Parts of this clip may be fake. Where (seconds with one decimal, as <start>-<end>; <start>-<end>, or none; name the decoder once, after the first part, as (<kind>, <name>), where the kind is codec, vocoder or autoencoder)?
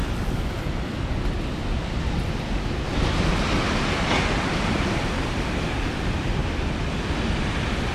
4.6-6.4 (vocoder, BigVGAN v2)